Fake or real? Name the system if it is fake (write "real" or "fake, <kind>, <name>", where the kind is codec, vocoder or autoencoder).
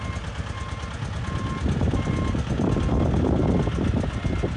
real